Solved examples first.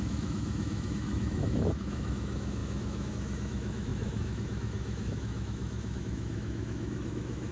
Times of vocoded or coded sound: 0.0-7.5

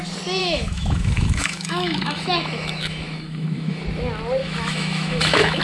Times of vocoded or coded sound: 0.4-3.8; 4.4-5.6